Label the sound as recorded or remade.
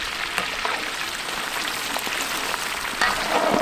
recorded